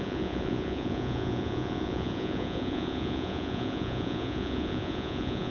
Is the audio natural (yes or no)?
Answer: no